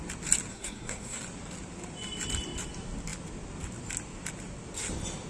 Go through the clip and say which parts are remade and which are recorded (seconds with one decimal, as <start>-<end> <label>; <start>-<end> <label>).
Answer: 0.0-0.5 recorded; 0.5-1.2 remade; 1.2-5.3 recorded